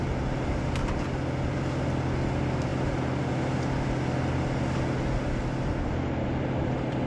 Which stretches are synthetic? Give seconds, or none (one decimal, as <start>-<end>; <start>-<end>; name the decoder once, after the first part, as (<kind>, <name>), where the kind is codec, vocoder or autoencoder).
none